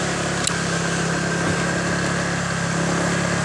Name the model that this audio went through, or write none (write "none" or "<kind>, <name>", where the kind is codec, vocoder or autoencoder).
none